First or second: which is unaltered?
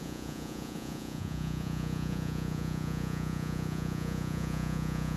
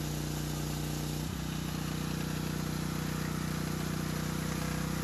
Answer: second